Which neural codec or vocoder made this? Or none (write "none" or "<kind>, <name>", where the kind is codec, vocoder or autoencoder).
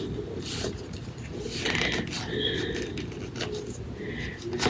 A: none